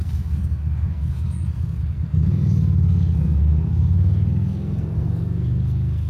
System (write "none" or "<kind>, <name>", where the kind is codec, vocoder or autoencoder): codec, SNAC